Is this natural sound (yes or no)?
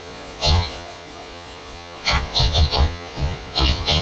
no